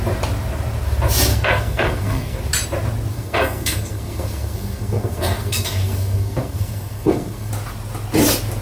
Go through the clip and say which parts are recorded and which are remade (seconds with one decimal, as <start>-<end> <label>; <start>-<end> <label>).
0.0-1.3 recorded; 1.3-2.4 remade; 2.4-3.1 recorded; 3.1-7.5 remade; 7.5-8.6 recorded